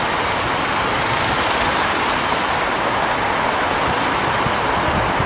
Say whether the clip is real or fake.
real